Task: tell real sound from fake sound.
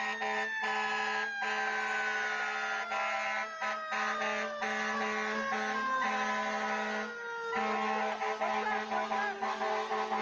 real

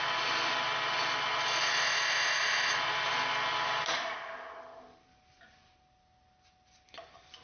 real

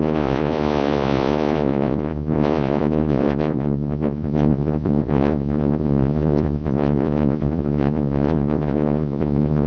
fake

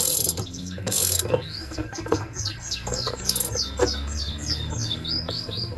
fake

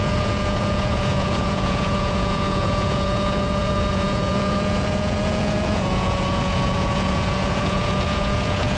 fake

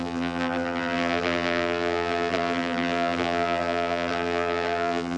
fake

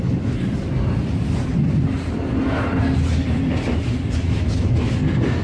real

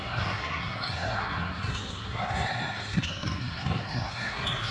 fake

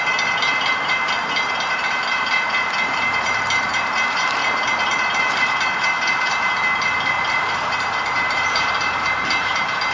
fake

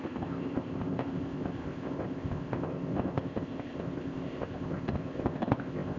fake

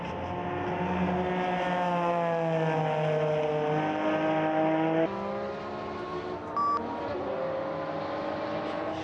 real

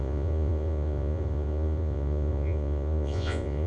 fake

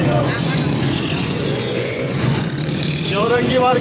fake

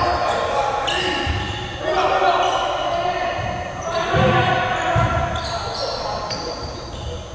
real